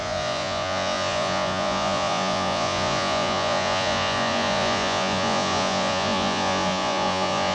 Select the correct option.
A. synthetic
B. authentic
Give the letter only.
A